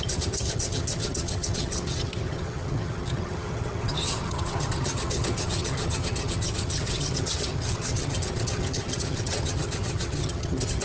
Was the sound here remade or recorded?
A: remade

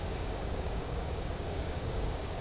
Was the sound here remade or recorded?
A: remade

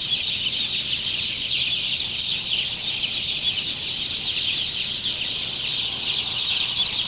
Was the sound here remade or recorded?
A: recorded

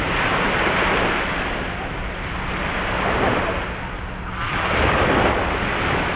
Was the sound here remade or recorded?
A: recorded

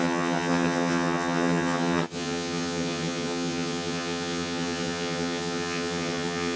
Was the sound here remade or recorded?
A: remade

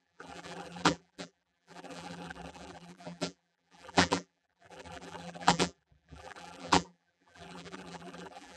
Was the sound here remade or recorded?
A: remade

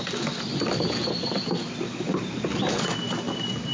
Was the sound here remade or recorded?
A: recorded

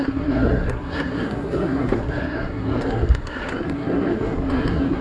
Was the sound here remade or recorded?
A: remade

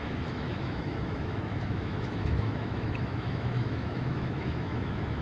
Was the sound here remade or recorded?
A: remade